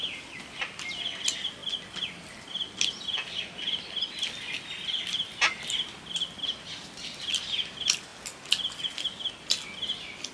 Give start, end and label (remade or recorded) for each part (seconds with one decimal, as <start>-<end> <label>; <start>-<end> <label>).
0.0-1.6 recorded; 1.6-2.1 remade; 2.1-10.3 recorded